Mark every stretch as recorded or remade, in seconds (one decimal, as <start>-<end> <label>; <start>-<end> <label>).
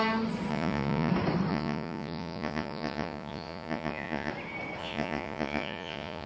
0.0-0.5 recorded; 0.5-1.1 remade; 1.1-1.5 recorded; 1.5-4.3 remade; 4.3-4.8 recorded; 4.8-6.3 remade